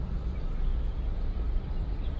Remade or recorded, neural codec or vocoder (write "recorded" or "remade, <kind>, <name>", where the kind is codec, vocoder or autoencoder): recorded